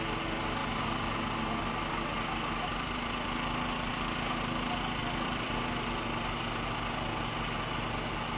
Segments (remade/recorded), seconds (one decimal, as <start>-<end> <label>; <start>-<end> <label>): 0.0-2.7 recorded; 2.7-3.9 remade; 3.9-5.0 recorded; 5.0-5.6 remade; 5.6-8.4 recorded